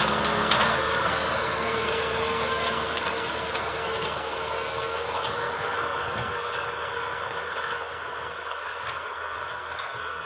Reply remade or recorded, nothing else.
remade